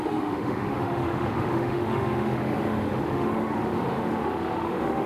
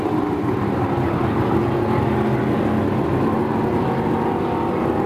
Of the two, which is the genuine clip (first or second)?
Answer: second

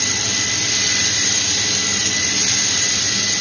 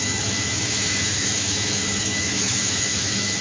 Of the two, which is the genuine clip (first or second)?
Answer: first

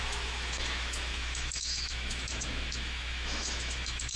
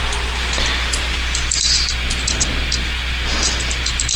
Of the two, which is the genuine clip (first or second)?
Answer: second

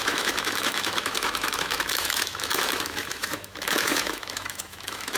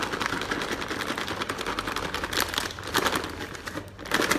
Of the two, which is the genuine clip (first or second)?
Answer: second